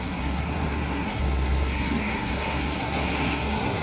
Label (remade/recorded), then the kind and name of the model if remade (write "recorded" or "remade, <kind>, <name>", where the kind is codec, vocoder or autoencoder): remade, codec, SNAC